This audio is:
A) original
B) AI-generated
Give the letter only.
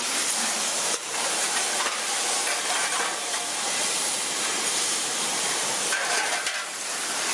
B